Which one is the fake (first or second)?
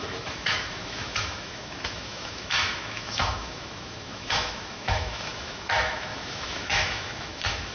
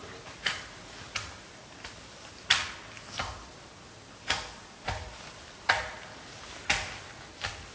first